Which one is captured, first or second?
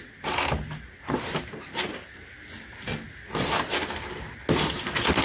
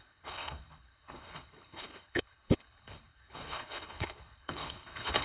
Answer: first